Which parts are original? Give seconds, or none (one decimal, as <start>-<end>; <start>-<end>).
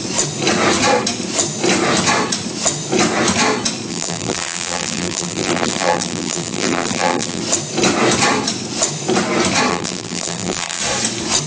0.0-3.9; 7.4-9.7; 10.8-11.5